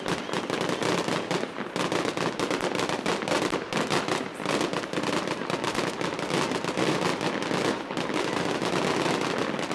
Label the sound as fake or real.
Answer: real